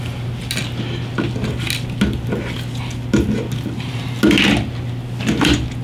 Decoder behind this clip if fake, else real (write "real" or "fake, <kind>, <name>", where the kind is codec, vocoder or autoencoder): real